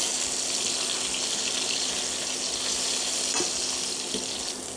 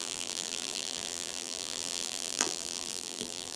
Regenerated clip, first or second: second